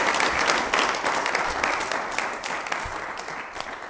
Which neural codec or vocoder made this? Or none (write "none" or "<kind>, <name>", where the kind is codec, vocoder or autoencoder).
none